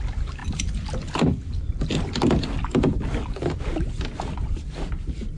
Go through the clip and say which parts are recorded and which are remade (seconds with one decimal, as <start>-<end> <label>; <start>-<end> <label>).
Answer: 0.0-5.4 recorded